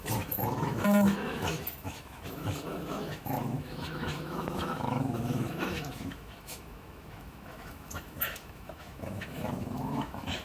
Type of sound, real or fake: fake